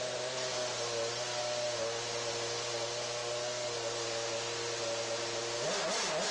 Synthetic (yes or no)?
no